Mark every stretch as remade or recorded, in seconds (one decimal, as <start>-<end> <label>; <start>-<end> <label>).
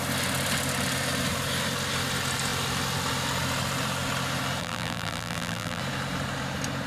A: 0.0-4.6 recorded; 4.6-5.8 remade; 5.8-6.9 recorded